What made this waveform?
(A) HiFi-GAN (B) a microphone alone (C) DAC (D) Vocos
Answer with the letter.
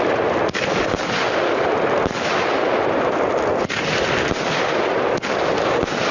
B